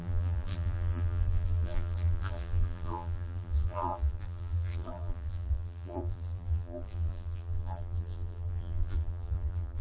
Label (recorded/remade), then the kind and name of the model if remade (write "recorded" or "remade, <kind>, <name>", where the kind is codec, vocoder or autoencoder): remade, vocoder, BigVGAN v2